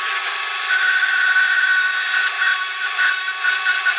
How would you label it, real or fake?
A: real